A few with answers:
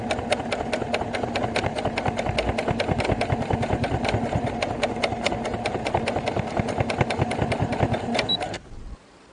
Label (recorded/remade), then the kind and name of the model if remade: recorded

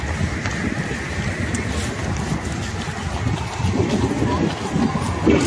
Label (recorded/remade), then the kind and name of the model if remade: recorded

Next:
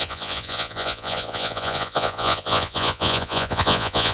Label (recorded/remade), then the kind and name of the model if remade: remade, vocoder, Vocos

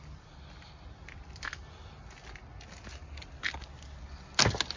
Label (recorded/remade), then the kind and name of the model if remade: recorded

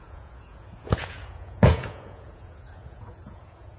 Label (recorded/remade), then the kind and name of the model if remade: remade, vocoder, Vocos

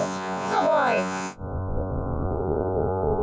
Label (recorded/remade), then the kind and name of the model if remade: remade, vocoder, Vocos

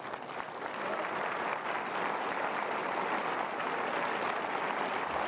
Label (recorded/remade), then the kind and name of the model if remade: recorded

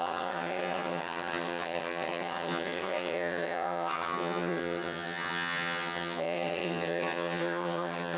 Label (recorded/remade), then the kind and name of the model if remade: remade, vocoder, HiFi-GAN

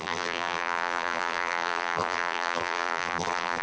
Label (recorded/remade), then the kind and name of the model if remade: remade, vocoder, BigVGAN v2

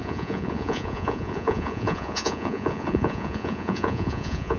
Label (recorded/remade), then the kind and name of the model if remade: remade, vocoder, Vocos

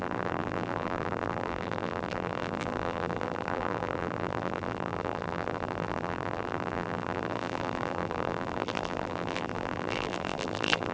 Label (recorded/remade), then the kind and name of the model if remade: remade, vocoder, BigVGAN v2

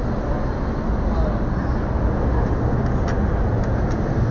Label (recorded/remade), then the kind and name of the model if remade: recorded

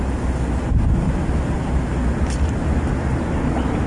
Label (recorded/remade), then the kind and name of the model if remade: recorded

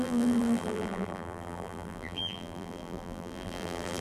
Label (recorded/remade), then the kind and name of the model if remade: remade, vocoder, BigVGAN v2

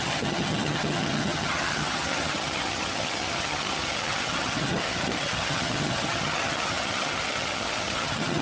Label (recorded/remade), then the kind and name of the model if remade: remade, vocoder, HiFi-GAN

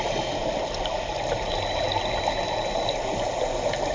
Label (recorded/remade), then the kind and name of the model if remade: recorded